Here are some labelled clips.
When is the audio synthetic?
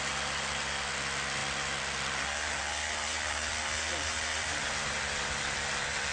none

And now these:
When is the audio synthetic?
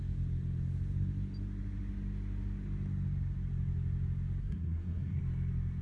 4.4-5.2 (codec, SNAC)